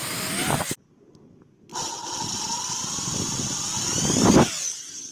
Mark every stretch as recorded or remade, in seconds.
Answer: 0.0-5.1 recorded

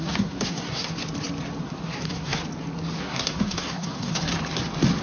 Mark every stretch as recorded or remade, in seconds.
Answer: 0.0-0.9 remade; 0.9-1.6 recorded; 1.6-2.4 remade; 2.4-3.0 recorded; 3.0-4.3 remade; 4.3-5.0 recorded

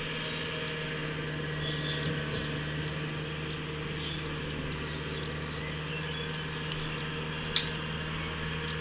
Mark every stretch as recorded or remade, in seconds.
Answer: 0.0-8.8 recorded